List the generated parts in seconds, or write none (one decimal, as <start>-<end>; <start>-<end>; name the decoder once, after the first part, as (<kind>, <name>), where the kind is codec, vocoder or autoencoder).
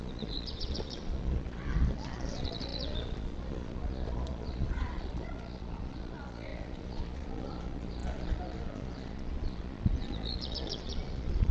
0.0-11.5 (vocoder, Vocos)